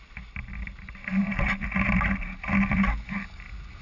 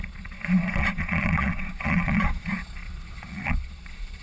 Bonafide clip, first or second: first